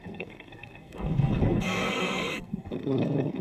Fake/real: fake